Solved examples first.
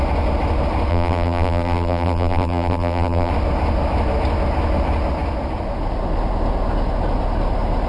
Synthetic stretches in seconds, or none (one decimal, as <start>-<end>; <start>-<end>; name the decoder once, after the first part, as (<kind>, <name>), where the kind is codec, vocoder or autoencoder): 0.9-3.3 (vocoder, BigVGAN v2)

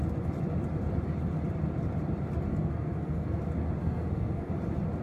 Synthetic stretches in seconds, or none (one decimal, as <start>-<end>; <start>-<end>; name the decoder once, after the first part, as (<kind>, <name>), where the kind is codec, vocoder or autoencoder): 2.5-3.4 (codec, SNAC); 3.8-4.5

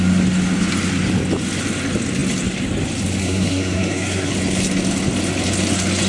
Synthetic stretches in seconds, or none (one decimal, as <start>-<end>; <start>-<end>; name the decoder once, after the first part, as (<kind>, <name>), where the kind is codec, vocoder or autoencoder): 3.2-4.3 (codec, SNAC)